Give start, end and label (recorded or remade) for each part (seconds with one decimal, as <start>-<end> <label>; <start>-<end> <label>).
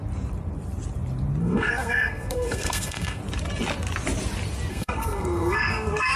0.0-1.4 recorded; 1.4-3.2 remade; 3.2-4.7 recorded; 4.7-6.2 remade